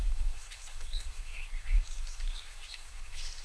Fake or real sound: fake